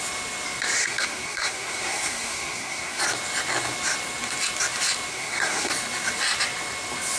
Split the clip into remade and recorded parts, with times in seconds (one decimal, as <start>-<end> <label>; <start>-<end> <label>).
0.0-0.8 recorded; 0.8-3.0 remade; 3.0-5.1 recorded; 5.1-5.7 remade; 5.7-7.2 recorded